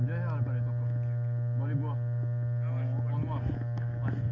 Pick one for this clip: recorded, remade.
recorded